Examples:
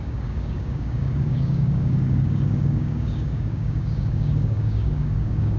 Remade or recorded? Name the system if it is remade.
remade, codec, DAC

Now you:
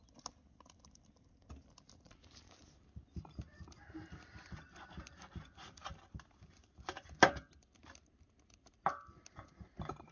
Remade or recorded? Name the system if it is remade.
recorded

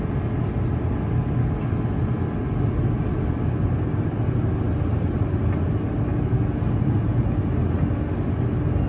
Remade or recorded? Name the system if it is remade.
recorded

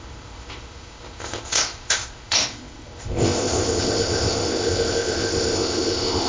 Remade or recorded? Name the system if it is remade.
remade, codec, ZipCodec